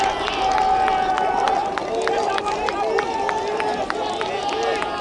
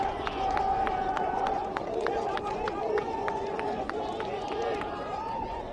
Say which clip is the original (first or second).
first